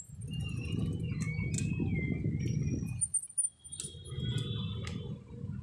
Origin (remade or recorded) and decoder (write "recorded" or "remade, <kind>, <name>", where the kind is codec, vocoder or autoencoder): recorded